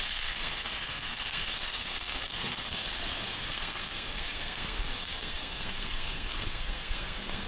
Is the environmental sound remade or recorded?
remade